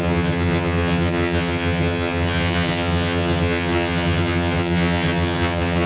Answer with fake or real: fake